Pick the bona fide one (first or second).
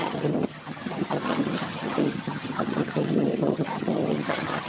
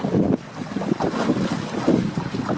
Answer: second